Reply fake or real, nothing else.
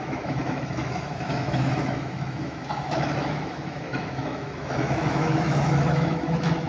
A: fake